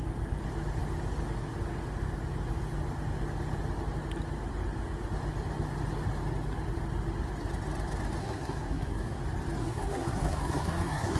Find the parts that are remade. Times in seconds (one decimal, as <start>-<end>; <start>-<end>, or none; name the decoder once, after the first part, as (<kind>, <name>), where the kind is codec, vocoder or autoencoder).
8.2-9.2 (codec, SNAC); 9.6-11.2